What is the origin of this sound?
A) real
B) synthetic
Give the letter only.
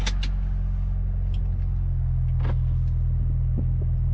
A